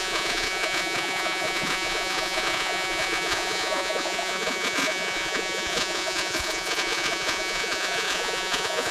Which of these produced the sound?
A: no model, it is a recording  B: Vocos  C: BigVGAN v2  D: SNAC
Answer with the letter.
B